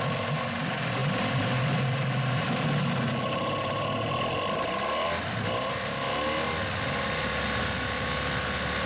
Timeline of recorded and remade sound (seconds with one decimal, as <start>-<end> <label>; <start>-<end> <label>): 0.0-8.9 recorded